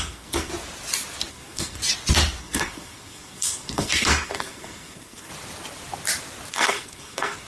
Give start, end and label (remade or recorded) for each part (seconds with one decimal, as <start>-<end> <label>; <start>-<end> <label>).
0.0-0.5 remade; 0.5-1.3 recorded; 1.3-1.8 remade; 1.8-2.4 recorded; 2.4-5.3 remade; 5.3-6.5 recorded; 6.5-7.5 remade